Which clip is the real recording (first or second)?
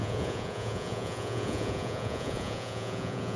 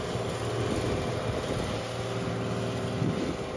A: second